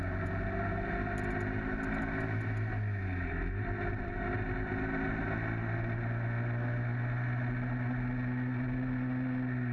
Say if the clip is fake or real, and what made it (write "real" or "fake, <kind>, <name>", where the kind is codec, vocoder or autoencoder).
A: real